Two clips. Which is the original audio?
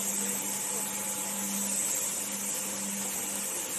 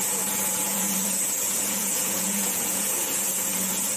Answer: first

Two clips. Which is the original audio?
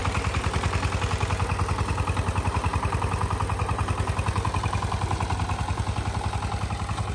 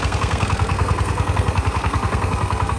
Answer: first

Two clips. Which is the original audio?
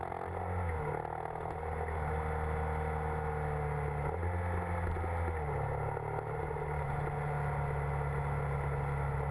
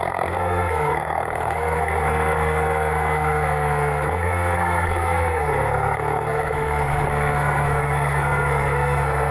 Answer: first